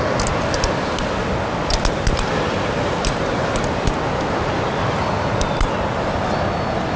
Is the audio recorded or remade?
recorded